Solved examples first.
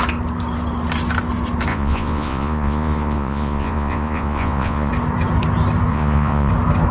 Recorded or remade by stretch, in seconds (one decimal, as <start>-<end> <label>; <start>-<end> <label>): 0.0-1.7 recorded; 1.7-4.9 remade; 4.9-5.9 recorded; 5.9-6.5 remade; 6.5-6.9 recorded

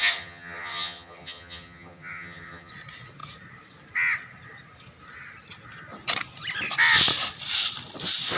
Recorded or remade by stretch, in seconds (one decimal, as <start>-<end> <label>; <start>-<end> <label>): 0.0-2.7 remade; 2.7-8.4 recorded

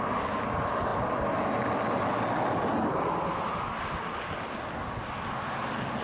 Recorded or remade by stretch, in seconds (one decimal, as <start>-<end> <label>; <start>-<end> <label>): 0.0-6.0 recorded

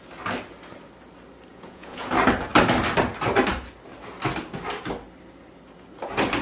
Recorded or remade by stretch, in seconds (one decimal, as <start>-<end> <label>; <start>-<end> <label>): 0.0-1.5 recorded; 1.5-2.1 remade; 2.1-6.4 recorded

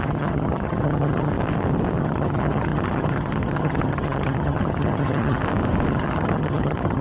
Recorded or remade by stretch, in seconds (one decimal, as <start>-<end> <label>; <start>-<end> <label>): 0.0-1.3 remade; 1.3-2.0 recorded; 2.0-5.4 remade; 5.4-5.9 recorded; 5.9-7.0 remade

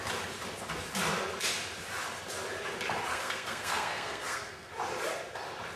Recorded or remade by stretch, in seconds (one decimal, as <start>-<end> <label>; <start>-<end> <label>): 0.0-3.1 recorded; 3.1-4.7 remade; 4.7-5.8 recorded

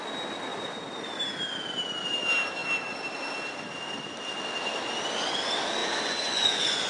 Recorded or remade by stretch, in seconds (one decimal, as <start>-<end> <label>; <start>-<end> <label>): 0.0-5.8 recorded; 5.8-6.9 remade

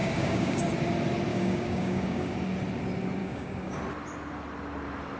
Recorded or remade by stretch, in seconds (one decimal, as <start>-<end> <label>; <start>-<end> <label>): 0.0-0.6 remade; 0.6-1.3 recorded; 1.3-2.3 remade; 2.3-3.2 recorded; 3.2-3.8 remade; 3.8-5.2 recorded